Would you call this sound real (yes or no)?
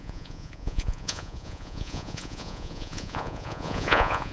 no